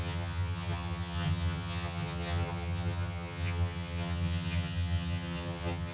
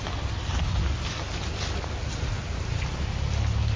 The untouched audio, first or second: second